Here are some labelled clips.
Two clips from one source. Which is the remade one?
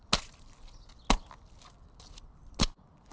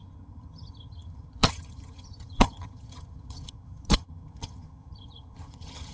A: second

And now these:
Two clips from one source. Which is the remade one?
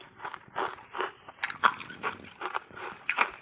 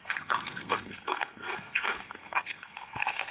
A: second